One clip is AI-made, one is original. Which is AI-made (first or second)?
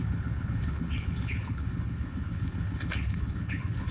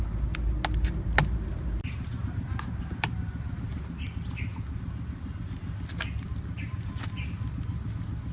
first